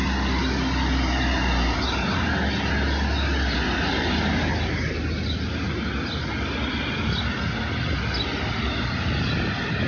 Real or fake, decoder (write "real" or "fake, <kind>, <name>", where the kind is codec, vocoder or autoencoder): real